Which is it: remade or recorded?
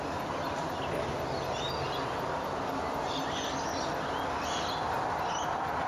recorded